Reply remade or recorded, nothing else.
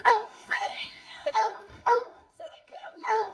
remade